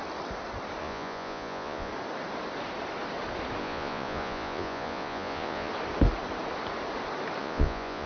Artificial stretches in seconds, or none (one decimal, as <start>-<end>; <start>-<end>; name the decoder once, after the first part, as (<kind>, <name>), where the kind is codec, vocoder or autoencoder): 0.8-1.9 (vocoder, Vocos); 3.6-5.7; 7.4-8.1